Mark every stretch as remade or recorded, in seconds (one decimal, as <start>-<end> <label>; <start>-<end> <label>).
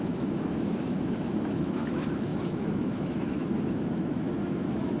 0.0-5.0 remade